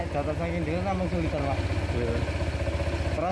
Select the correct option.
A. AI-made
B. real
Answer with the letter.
B